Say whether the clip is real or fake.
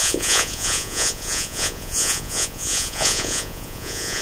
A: fake